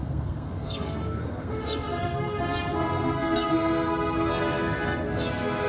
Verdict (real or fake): fake